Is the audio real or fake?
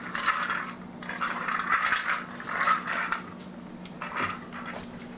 real